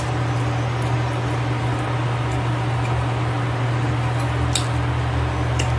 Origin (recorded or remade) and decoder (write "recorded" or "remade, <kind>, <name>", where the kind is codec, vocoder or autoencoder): recorded